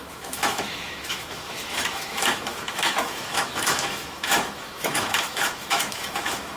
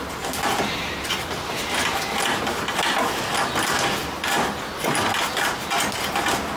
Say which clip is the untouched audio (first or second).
second